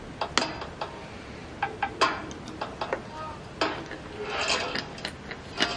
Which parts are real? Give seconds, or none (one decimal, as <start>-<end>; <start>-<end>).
0.0-5.8